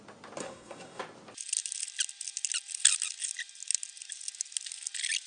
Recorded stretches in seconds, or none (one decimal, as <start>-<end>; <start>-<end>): 0.0-0.4; 1.0-5.3